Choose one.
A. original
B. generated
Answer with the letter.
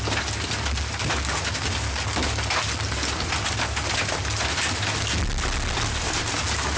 A